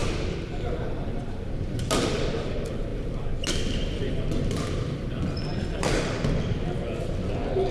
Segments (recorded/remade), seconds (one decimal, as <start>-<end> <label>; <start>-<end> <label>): 0.0-7.7 recorded